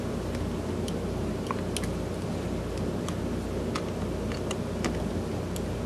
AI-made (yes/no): no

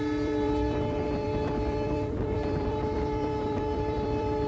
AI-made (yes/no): yes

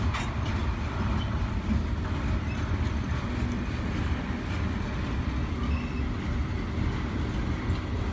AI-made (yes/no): no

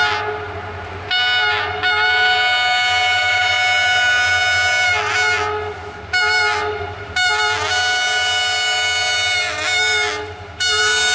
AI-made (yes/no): no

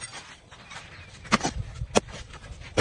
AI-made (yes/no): no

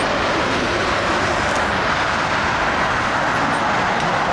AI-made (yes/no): no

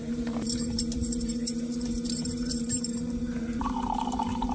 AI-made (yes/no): yes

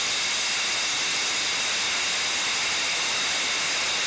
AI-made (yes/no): no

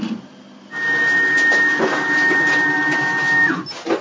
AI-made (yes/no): no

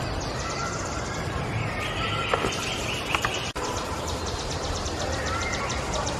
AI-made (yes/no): yes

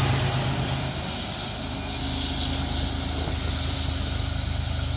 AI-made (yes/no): no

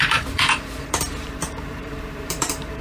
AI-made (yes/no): yes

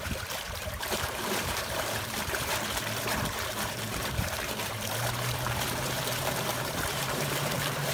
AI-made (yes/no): yes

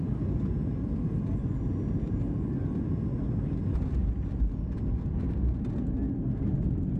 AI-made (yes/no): no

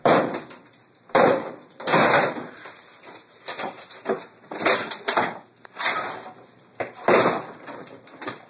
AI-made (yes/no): yes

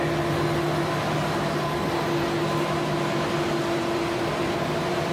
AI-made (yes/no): no